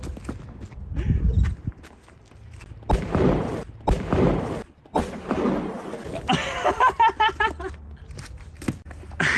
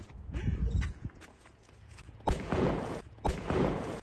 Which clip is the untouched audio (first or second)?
first